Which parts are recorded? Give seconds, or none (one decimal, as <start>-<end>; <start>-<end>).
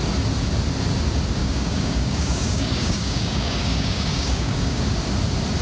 0.0-1.4; 4.8-5.6